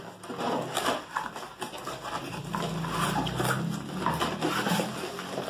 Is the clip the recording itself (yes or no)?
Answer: yes